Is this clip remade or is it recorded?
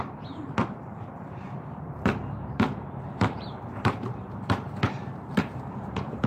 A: remade